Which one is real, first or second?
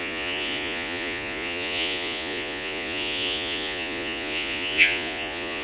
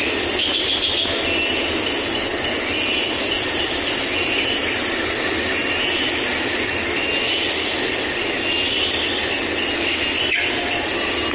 second